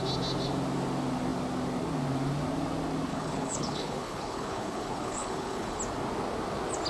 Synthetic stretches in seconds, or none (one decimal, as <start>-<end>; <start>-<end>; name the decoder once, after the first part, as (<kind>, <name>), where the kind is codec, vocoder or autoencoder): 3.1-5.8 (codec, HILCodec)